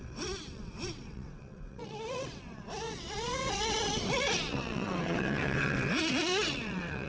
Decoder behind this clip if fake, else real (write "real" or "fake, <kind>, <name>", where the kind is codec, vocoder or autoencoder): fake, vocoder, WaveNeXt